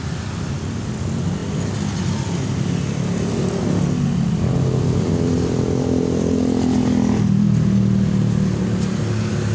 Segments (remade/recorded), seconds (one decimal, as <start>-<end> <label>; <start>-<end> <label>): 0.0-9.5 recorded